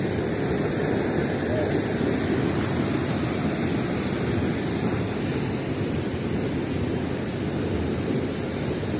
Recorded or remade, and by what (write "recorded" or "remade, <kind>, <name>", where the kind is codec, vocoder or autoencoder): recorded